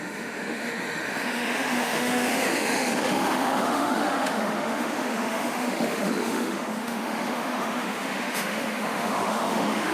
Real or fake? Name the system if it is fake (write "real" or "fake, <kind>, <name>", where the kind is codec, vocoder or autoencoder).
fake, autoencoder, DAC-VAE